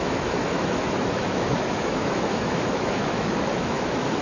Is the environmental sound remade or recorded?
remade